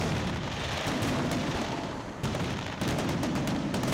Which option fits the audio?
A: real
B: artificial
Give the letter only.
B